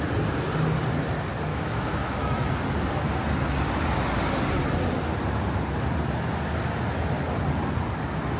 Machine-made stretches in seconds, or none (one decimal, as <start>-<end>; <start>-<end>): 1.5-2.5